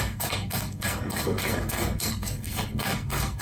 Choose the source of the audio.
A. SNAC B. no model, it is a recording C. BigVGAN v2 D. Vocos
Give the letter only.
A